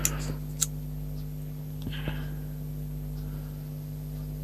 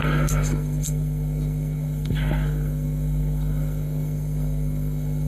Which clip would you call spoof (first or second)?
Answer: second